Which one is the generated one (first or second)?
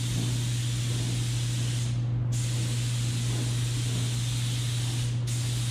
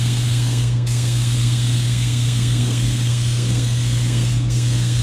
second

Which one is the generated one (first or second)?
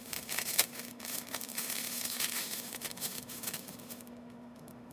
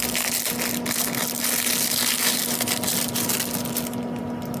first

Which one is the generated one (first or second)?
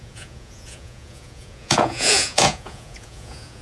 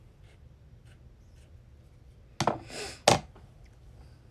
first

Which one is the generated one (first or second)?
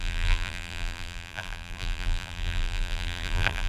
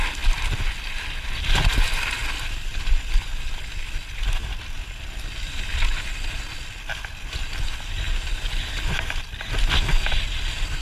first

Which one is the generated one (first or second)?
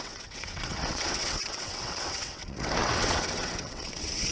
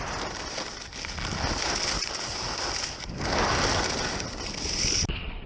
first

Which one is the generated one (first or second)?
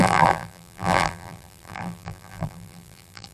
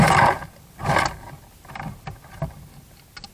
first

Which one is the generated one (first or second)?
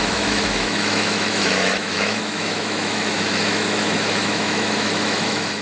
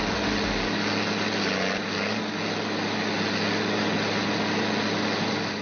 first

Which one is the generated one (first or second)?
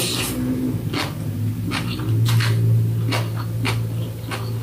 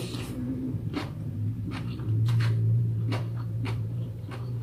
second